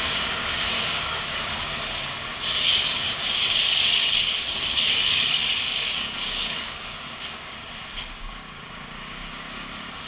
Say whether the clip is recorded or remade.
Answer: remade